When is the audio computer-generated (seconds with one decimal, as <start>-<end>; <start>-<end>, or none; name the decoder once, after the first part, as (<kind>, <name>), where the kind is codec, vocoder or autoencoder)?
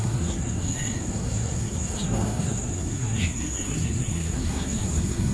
0.0-5.3 (codec, SNAC)